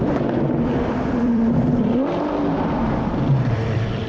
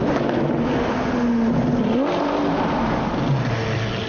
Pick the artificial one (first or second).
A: first